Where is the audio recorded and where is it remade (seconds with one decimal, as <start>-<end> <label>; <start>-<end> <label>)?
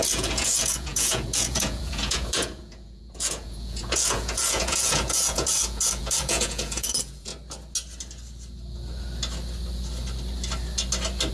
0.0-7.3 remade; 7.3-11.3 recorded